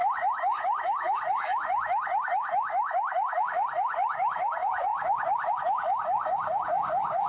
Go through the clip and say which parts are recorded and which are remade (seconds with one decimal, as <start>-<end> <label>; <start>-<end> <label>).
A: 0.0-7.3 remade